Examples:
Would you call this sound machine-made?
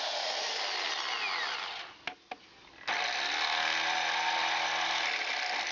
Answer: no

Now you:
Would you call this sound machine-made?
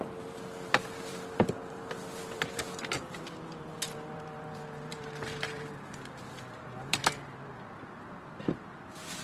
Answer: yes